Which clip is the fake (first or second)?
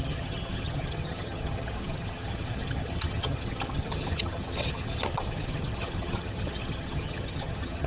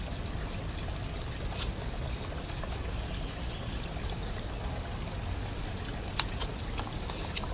first